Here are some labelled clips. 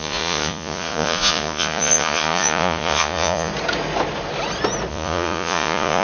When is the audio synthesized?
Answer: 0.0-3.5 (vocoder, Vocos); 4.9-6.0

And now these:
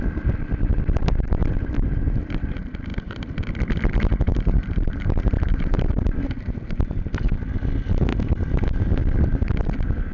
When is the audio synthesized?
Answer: 1.4-2.5 (vocoder, BigVGAN v2); 4.3-6.2

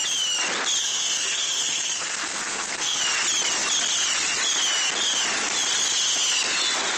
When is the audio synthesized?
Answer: 0.8-3.0 (codec, SNAC)

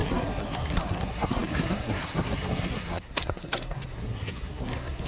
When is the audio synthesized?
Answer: 0.0-5.1 (codec, SNAC)

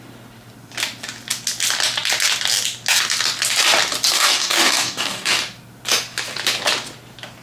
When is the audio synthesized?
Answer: 4.1-5.4 (codec, DAC)

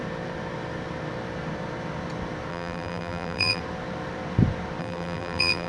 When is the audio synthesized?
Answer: 2.5-3.6 (vocoder, BigVGAN v2); 4.8-5.7

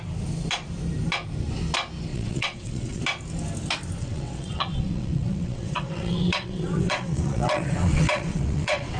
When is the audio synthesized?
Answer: 2.1-3.0 (vocoder, WaveNeXt); 4.0-9.0